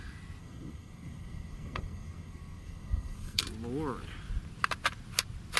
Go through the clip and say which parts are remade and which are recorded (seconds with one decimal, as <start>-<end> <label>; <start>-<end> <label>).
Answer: 0.0-0.4 recorded; 0.4-3.4 remade; 3.4-5.6 recorded